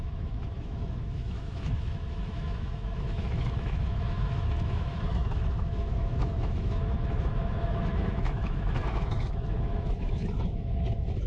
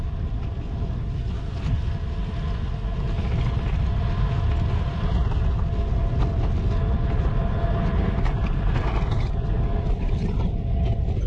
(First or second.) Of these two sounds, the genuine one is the second